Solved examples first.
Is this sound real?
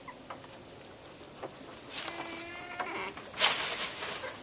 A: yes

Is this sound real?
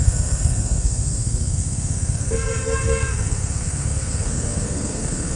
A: no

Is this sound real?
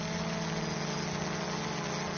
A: yes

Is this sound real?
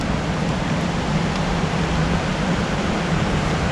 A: yes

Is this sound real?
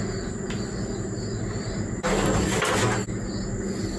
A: yes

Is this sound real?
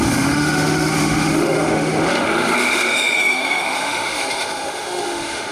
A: no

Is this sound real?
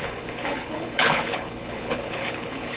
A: no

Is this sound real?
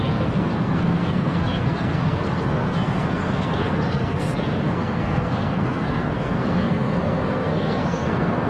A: no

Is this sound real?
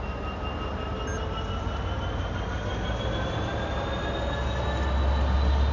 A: yes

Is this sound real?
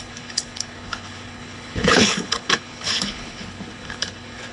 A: no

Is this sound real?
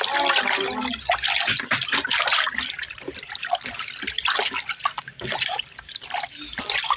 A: yes